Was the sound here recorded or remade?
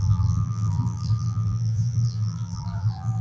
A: remade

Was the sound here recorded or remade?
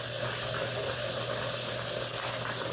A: recorded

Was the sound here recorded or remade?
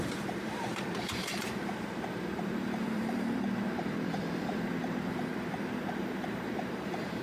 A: remade